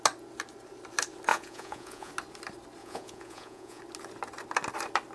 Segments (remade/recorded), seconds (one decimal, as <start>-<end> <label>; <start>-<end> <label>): 0.0-1.3 recorded; 1.3-2.1 remade; 2.1-2.8 recorded; 2.8-3.8 remade; 3.8-5.1 recorded